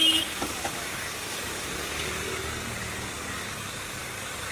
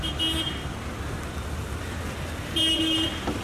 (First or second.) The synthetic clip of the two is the first